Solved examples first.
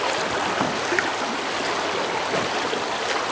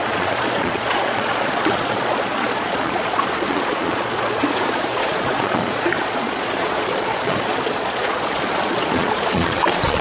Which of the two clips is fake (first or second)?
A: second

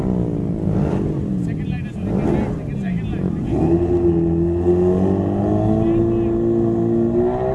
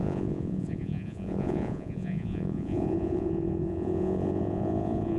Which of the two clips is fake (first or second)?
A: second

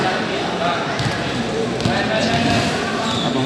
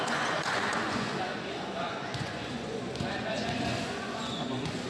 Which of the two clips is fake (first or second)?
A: second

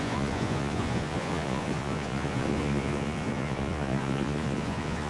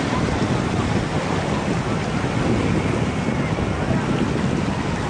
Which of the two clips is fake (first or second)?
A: first